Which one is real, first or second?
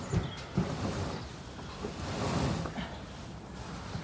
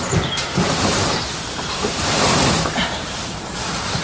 first